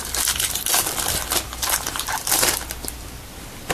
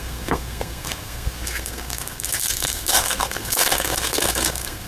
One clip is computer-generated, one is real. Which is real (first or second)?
first